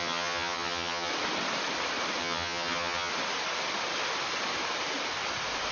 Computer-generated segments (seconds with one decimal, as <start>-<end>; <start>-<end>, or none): 0.0-1.1; 2.2-3.1